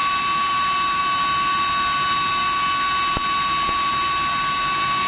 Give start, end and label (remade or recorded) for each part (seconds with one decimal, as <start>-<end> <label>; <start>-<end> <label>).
0.0-5.1 recorded